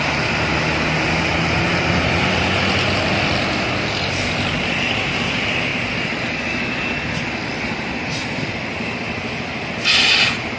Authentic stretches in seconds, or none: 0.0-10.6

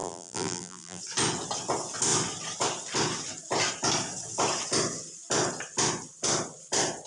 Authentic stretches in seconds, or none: 1.0-7.1

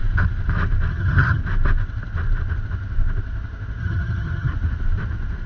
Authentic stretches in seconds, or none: 0.0-0.9; 1.4-3.8; 4.5-5.5